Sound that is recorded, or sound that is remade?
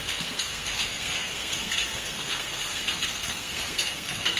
remade